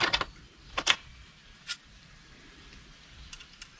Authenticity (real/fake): fake